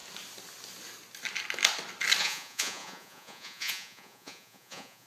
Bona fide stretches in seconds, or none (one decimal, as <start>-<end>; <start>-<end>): 0.0-2.2